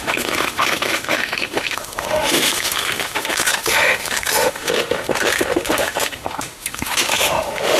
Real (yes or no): no